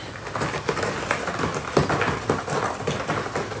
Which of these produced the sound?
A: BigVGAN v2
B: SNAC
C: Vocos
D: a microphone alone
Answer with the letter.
D